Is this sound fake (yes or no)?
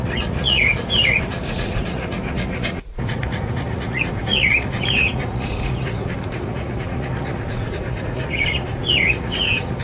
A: yes